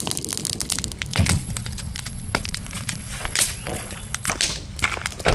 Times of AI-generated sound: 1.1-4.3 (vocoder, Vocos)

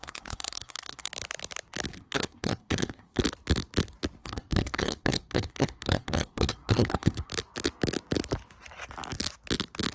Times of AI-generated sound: 0.0-1.1 (codec, SNAC); 1.9-3.2; 4.2-7.3

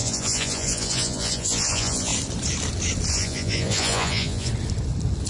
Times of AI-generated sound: 0.0-2.1 (vocoder, Vocos); 3.1-4.5

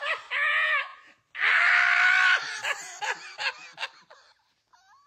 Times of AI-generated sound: none

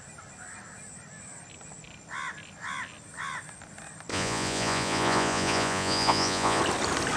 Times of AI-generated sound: 4.1-6.6 (vocoder, Vocos)

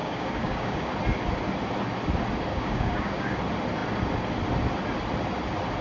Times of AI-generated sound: 0.0-0.9 (codec, DAC); 2.5-3.4

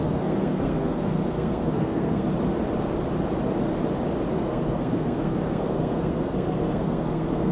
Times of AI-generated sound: 0.0-2.3 (codec, SNAC); 4.3-7.5